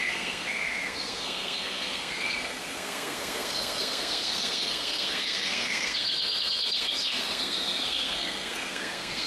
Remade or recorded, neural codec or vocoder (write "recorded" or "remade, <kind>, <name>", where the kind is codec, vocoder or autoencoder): remade, codec, SNAC